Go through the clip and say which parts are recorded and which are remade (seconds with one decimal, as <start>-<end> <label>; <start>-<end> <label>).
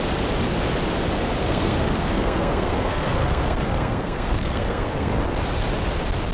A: 0.0-1.4 recorded; 1.4-5.2 remade; 5.2-6.3 recorded